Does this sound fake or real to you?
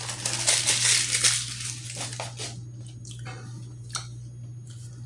real